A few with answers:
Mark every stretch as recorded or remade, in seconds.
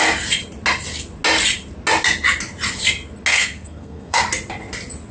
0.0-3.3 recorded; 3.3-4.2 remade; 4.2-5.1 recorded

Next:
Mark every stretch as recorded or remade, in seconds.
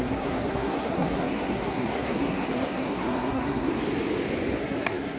0.0-3.7 remade; 3.7-4.6 recorded; 4.6-5.2 remade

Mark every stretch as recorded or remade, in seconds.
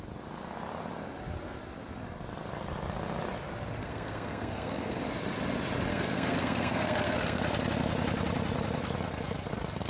0.0-3.8 recorded; 3.8-5.0 remade; 5.0-5.9 recorded; 5.9-7.4 remade; 7.4-9.9 recorded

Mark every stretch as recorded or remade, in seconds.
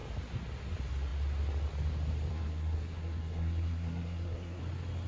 0.0-2.3 recorded; 2.3-4.6 remade; 4.6-5.1 recorded